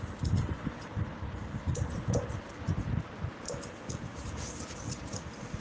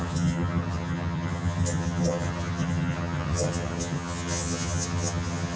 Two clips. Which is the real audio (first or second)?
first